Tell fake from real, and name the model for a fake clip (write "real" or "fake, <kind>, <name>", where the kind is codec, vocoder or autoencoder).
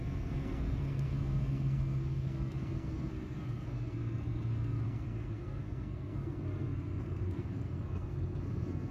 fake, codec, SNAC